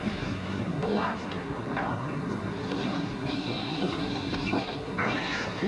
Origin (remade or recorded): remade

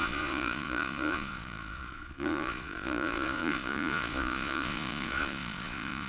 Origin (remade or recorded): remade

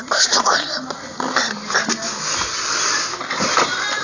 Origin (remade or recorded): recorded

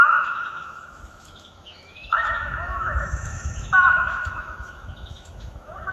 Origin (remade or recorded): remade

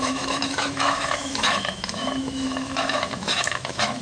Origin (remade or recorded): remade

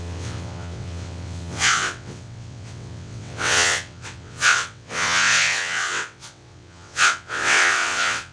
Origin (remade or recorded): remade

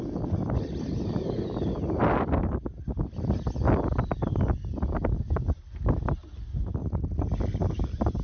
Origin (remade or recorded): recorded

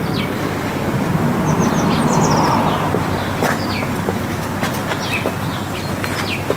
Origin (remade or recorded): recorded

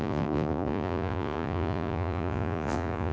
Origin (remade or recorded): remade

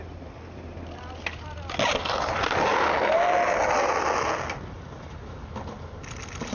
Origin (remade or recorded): recorded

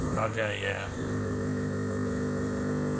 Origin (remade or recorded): remade